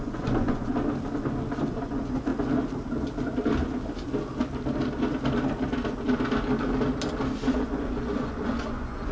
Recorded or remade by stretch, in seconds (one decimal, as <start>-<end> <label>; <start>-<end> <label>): 0.0-0.7 remade; 0.7-1.7 recorded; 1.7-2.3 remade; 2.3-7.6 recorded; 7.6-9.1 remade